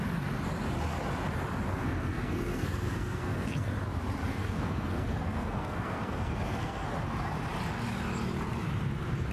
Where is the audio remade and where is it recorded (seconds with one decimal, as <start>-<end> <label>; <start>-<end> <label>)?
0.0-1.7 recorded; 1.7-3.7 remade; 3.7-4.3 recorded; 4.3-6.9 remade; 6.9-9.3 recorded